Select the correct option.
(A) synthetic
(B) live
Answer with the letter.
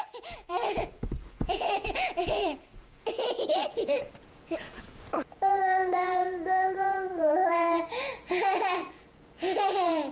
A